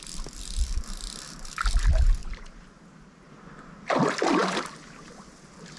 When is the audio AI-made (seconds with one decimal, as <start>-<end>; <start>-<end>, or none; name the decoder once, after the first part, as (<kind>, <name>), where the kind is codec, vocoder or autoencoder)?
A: 2.2-3.3 (vocoder, BigVGAN v2)